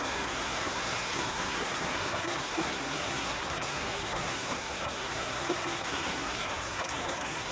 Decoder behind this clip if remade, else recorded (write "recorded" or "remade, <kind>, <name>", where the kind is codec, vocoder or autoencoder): remade, codec, SNAC